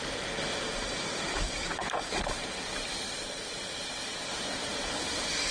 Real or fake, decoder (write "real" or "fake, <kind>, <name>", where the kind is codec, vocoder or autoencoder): fake, vocoder, BigVGAN v2